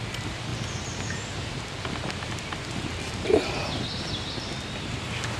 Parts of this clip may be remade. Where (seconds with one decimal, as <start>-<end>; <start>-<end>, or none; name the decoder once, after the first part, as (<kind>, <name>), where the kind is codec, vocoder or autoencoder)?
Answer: none